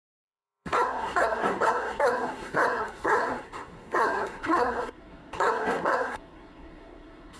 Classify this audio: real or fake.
fake